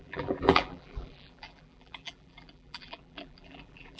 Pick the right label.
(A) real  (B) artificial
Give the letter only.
B